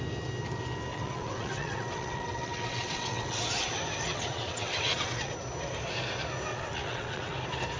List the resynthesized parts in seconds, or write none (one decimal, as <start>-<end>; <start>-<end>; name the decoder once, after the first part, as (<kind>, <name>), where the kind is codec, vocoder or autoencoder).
0.9-3.4 (vocoder, WaveNeXt); 4.1-5.3; 6.5-7.3